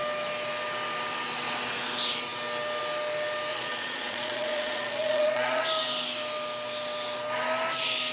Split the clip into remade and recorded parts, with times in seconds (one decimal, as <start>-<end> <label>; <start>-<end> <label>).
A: 0.0-3.5 recorded; 3.5-5.6 remade; 5.6-8.1 recorded